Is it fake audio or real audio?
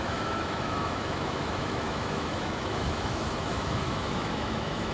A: fake